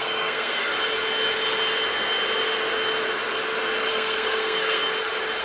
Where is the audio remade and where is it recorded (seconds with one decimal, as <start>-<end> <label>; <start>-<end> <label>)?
0.0-0.7 remade; 0.7-3.9 recorded; 3.9-4.8 remade; 4.8-5.4 recorded